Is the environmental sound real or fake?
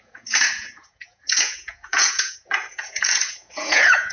fake